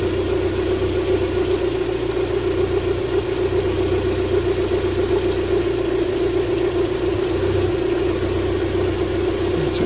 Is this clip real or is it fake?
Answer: real